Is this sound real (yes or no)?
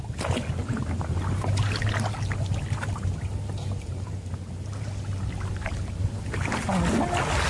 yes